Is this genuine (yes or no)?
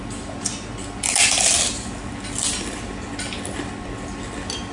yes